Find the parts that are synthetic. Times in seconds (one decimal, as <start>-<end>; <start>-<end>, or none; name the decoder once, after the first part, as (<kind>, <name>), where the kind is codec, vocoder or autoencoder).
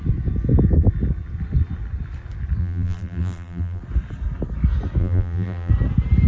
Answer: 2.6-3.8 (vocoder, BigVGAN v2); 5.0-5.7